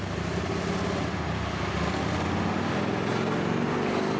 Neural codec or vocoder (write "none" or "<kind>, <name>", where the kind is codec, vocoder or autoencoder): none